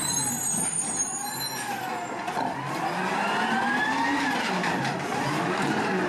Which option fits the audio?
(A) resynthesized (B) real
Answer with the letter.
A